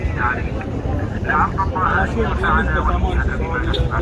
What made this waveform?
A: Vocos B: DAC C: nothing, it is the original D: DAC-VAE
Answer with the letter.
C